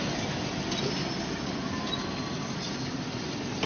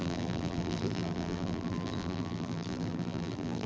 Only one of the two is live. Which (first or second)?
first